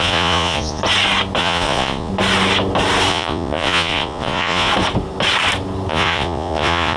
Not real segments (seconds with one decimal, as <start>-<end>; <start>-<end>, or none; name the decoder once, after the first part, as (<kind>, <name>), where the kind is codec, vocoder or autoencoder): 0.0-0.8 (vocoder, Vocos); 1.4-2.1; 3.1-4.7; 5.9-7.0

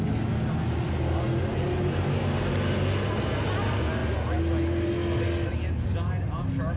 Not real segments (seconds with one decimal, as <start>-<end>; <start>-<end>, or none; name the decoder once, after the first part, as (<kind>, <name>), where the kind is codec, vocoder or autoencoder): none

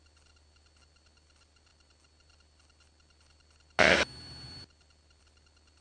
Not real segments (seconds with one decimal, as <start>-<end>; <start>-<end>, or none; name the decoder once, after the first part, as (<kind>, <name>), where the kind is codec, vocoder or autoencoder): none